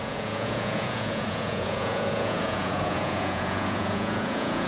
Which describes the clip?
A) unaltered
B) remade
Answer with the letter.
B